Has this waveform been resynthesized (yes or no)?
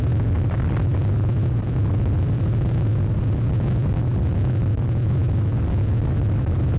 yes